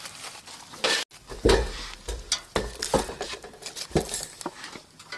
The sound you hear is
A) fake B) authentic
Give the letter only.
B